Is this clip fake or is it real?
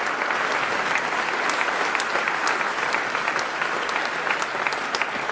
real